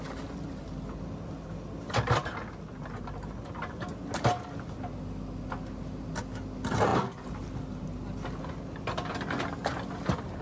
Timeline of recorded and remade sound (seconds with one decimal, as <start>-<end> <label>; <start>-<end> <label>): 0.0-10.4 recorded